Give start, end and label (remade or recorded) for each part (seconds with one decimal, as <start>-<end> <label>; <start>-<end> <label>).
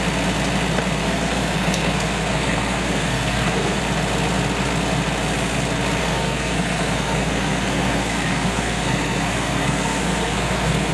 0.0-1.0 recorded; 1.0-3.8 remade; 3.8-6.0 recorded; 6.0-10.9 remade